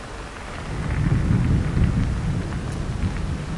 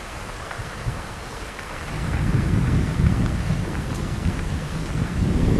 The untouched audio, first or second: first